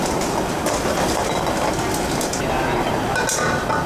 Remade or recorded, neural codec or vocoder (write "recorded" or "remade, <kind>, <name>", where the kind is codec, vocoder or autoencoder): recorded